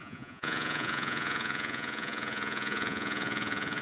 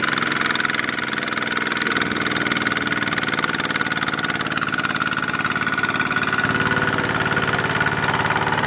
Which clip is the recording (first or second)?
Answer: second